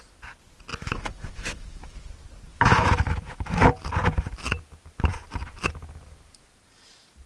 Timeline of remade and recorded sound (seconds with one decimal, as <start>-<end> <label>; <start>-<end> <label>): 0.0-0.7 recorded; 0.7-2.1 remade; 2.1-2.5 recorded; 2.5-3.7 remade; 3.7-7.3 recorded

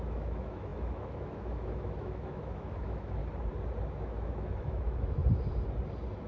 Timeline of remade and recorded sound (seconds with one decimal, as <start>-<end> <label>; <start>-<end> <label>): 0.0-3.2 remade; 3.2-3.9 recorded; 3.9-5.2 remade; 5.2-6.3 recorded

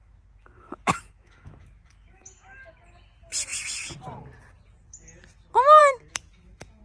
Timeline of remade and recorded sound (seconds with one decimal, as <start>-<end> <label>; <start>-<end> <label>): 0.0-2.7 remade; 2.7-5.8 recorded; 5.8-6.8 remade

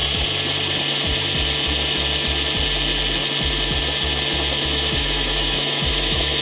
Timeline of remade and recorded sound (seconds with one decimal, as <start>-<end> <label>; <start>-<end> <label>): 0.0-4.5 recorded; 4.5-6.4 remade